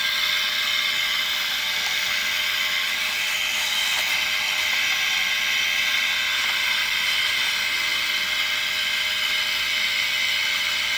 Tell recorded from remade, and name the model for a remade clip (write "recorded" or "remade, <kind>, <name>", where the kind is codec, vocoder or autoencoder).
recorded